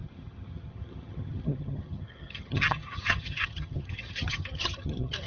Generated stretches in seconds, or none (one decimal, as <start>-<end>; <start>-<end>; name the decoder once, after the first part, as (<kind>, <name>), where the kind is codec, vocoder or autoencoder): 0.0-5.3 (vocoder, HiFi-GAN)